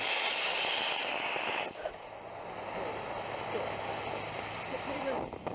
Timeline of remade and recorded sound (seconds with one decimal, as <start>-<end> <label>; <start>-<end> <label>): 0.0-5.5 recorded